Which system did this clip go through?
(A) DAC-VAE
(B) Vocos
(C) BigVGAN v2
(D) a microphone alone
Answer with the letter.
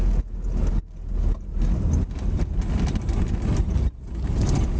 D